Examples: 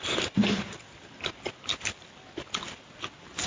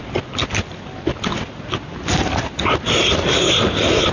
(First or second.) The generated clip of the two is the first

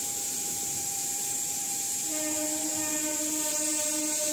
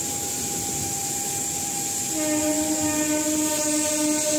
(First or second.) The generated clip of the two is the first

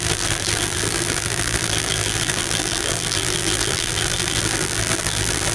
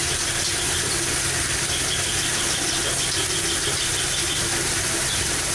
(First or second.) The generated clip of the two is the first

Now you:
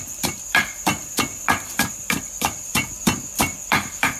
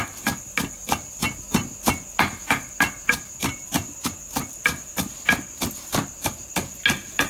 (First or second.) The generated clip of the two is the first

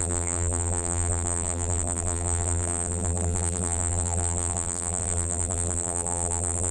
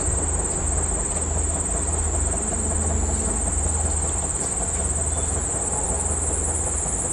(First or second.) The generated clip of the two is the first